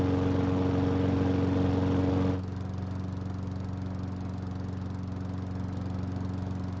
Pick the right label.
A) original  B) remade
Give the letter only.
A